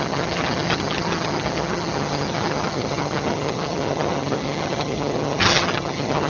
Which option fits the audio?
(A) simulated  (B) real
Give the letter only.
A